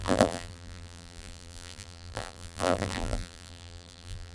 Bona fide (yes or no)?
no